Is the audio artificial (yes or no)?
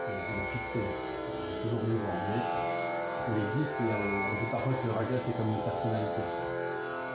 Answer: yes